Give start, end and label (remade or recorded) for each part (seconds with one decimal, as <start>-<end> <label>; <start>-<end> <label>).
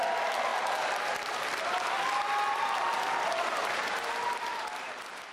0.0-5.3 recorded